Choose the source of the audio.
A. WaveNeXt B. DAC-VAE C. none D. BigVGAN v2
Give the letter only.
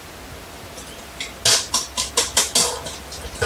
C